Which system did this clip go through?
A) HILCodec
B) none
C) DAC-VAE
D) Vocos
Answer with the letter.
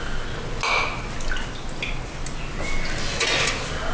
B